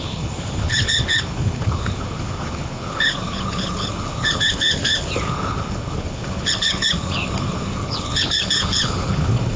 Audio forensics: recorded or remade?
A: remade